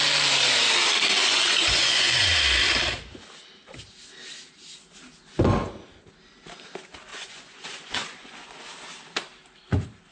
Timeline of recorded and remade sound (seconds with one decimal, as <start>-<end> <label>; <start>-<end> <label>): 0.0-1.2 recorded; 1.2-2.3 remade; 2.3-7.1 recorded; 7.1-8.6 remade; 8.6-10.1 recorded